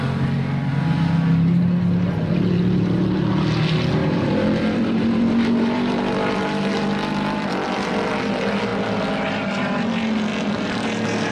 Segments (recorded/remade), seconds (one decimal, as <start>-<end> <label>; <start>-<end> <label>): 0.0-4.0 recorded; 4.0-8.1 remade; 8.1-11.3 recorded